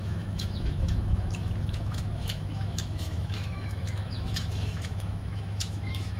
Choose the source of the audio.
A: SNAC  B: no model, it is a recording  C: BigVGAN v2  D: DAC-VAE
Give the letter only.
D